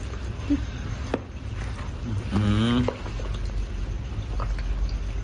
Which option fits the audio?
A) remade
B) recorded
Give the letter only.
B